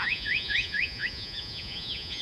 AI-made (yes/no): yes